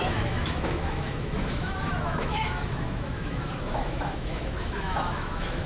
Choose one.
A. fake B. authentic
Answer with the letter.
A